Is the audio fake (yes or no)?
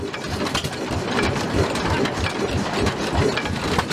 no